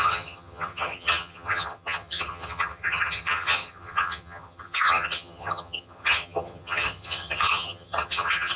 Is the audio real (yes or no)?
no